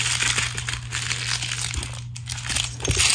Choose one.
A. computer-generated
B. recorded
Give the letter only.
B